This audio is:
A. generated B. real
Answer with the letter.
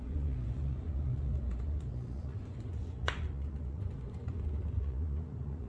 A